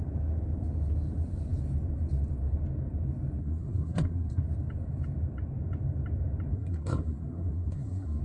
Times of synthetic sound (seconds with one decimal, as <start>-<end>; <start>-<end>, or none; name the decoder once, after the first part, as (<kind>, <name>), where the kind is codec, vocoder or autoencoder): 3.4-4.4 (codec, SNAC); 6.5-8.2